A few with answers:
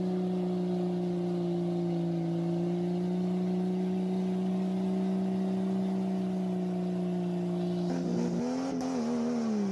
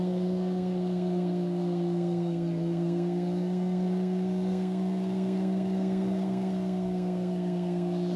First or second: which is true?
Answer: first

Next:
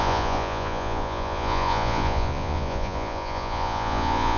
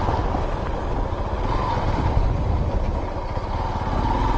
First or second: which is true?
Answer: second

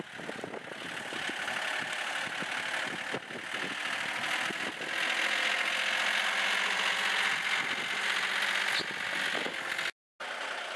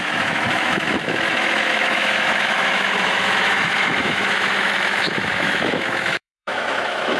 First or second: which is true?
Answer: first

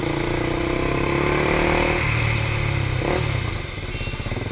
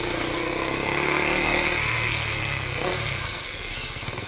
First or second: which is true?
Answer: first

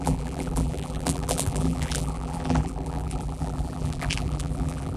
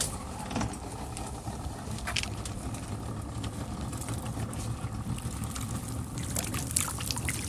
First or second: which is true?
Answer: second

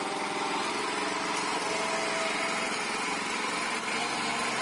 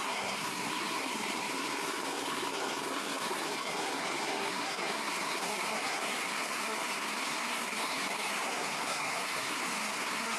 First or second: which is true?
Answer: first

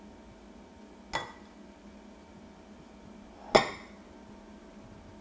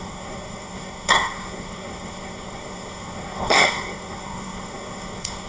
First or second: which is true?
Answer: first